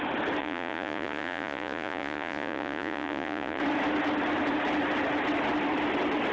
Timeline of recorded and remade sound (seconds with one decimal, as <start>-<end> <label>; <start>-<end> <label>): 0.0-0.4 recorded; 0.4-3.6 remade; 3.6-6.3 recorded